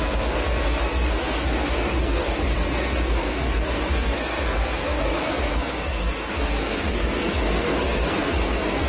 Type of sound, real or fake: fake